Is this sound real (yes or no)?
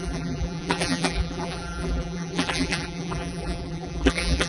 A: no